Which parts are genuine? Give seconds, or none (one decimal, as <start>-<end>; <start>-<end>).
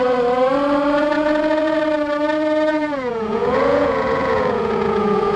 0.0-1.0; 1.8-2.7